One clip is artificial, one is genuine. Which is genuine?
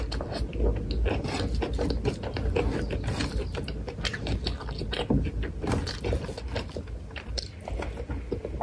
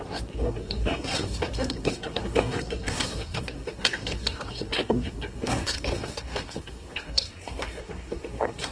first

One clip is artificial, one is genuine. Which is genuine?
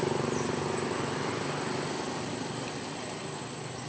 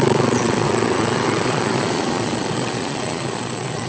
first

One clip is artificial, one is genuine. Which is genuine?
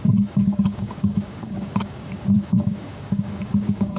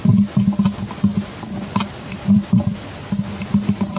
second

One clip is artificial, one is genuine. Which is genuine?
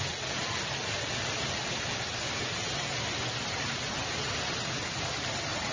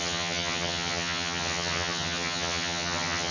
first